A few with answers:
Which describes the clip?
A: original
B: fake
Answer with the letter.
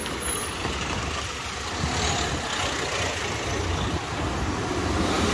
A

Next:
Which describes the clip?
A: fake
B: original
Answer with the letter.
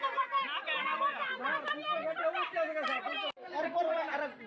B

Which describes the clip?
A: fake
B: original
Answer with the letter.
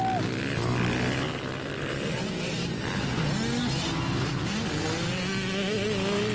B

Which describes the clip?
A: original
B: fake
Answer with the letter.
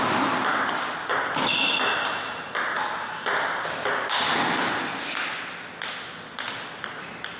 A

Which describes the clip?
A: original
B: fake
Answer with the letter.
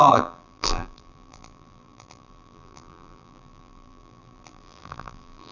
B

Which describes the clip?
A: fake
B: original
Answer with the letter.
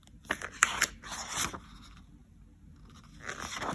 B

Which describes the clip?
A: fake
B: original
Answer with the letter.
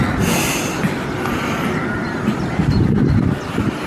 B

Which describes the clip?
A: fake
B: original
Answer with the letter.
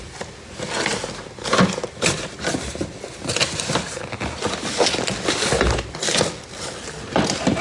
B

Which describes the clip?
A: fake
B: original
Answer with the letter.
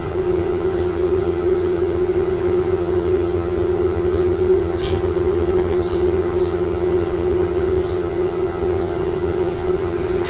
A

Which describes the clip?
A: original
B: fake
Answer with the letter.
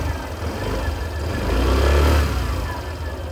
A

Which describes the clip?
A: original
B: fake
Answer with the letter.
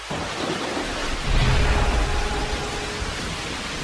A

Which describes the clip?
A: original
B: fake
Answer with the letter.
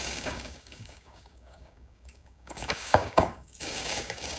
B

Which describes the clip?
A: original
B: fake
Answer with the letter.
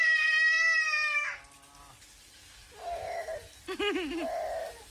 A